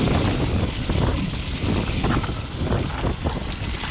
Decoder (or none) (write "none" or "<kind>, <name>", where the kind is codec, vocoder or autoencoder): none